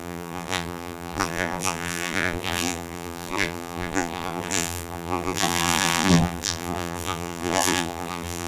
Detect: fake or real fake